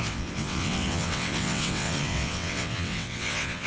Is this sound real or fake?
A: fake